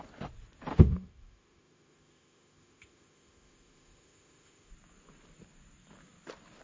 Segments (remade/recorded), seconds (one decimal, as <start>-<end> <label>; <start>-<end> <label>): 0.0-0.7 recorded; 0.7-4.7 remade; 4.7-6.6 recorded

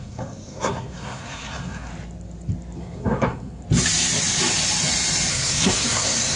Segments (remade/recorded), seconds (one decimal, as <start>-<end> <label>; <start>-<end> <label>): 0.0-1.9 remade; 1.9-2.8 recorded; 2.8-3.6 remade; 3.6-5.3 recorded; 5.3-6.4 remade

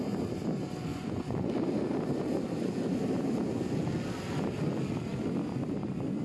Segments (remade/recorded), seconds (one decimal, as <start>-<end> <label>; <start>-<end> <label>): 0.0-0.9 recorded; 0.9-1.5 remade; 1.5-6.2 recorded